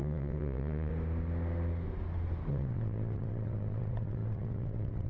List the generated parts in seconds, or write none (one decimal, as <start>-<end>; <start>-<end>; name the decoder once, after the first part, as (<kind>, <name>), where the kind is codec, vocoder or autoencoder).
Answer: 0.0-0.9 (vocoder, WaveNeXt); 2.5-5.1